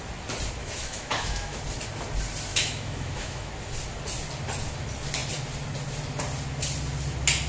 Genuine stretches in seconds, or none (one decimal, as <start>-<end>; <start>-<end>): 0.0-0.6; 1.6-2.5; 3.5-7.5